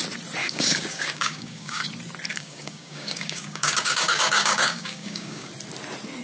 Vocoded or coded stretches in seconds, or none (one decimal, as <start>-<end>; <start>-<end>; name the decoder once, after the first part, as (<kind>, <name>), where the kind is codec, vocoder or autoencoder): 0.4-1.8 (codec, DAC); 2.3-5.5